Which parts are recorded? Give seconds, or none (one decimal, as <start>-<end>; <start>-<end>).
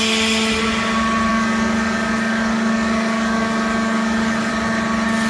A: 0.0-1.3; 4.5-5.3